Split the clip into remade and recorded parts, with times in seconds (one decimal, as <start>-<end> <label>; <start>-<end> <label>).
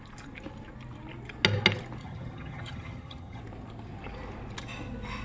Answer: 0.0-2.0 recorded; 2.0-3.4 remade; 3.4-5.2 recorded